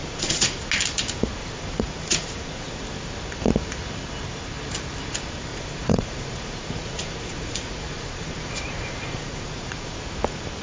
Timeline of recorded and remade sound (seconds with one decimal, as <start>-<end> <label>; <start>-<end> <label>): 0.0-0.6 remade; 0.6-1.4 recorded; 1.4-2.8 remade; 2.8-5.5 recorded; 5.5-10.0 remade; 10.0-10.6 recorded